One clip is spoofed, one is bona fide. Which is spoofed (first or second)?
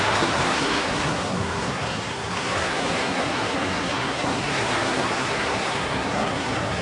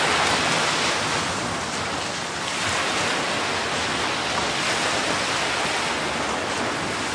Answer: first